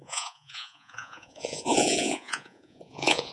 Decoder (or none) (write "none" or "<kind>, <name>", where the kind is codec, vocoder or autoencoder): vocoder, Vocos